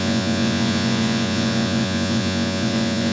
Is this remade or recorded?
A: remade